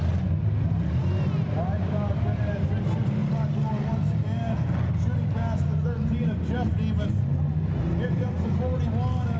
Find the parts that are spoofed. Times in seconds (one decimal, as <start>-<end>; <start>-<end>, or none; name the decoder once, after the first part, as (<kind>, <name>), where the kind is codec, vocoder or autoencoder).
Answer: none